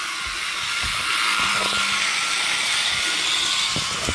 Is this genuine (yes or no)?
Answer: yes